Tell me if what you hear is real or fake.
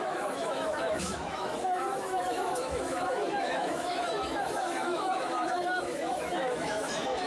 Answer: fake